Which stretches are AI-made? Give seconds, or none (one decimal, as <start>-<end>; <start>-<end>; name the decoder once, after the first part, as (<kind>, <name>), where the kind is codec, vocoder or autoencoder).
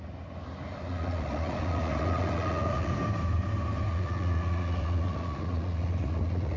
0.9-2.9 (vocoder, Vocos); 3.9-6.6